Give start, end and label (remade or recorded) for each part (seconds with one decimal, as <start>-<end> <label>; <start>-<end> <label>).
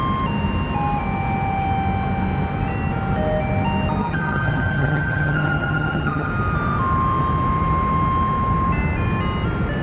0.0-4.0 recorded; 4.0-6.3 remade; 6.3-9.8 recorded